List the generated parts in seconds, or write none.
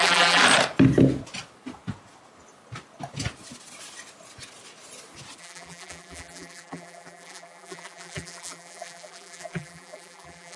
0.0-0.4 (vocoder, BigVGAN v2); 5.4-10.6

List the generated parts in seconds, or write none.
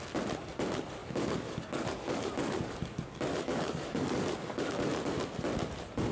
1.0-4.7 (codec, DAC)